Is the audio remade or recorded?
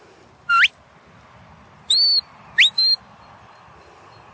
recorded